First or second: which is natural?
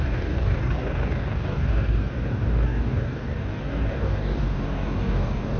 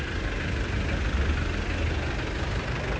second